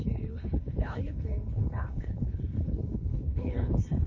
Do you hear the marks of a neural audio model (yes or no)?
yes